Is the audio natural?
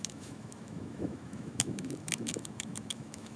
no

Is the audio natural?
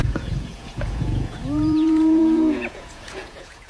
no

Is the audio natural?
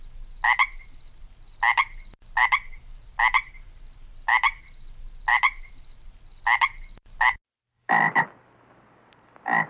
yes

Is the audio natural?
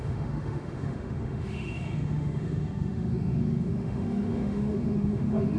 no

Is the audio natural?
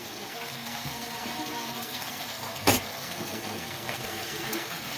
no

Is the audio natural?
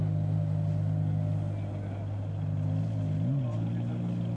yes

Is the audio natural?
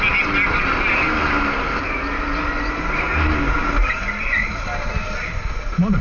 yes